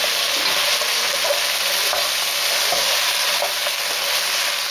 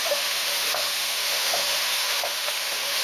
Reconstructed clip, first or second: second